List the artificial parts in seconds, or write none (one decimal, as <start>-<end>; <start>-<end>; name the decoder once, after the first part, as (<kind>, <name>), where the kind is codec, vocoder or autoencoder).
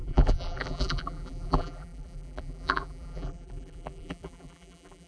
0.0-5.1 (vocoder, BigVGAN v2)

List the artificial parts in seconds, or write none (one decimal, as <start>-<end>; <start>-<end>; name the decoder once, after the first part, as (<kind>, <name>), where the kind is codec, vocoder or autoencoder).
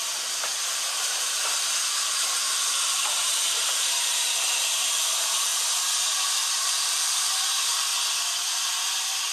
0.0-5.5 (vocoder, BigVGAN v2); 6.4-7.9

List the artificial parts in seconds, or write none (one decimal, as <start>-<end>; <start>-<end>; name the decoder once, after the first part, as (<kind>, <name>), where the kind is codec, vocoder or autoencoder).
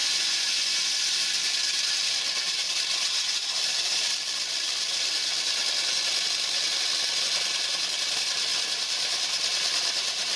0.0-0.9 (vocoder, Vocos)